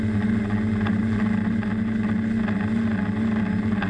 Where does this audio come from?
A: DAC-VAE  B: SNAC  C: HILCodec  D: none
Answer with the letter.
D